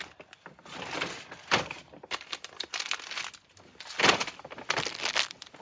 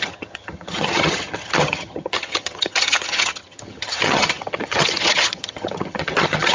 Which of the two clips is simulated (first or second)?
second